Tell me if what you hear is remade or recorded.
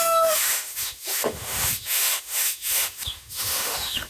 remade